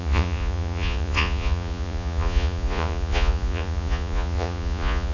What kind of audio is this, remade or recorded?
remade